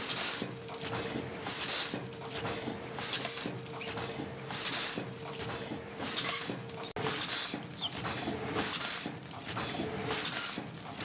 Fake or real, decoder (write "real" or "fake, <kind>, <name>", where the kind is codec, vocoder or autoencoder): real